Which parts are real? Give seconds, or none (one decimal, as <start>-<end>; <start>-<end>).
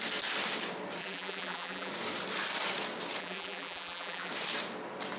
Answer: 0.0-1.0; 1.9-3.2; 4.3-5.2